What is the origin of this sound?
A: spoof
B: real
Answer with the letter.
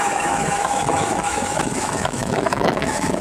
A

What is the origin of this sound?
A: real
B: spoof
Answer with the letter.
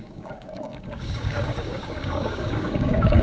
B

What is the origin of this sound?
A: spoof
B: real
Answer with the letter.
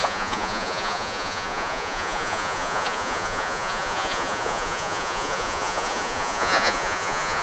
A